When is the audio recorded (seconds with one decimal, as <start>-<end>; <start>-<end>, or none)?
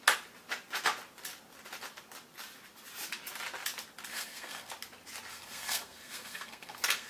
0.0-4.1; 4.7-5.3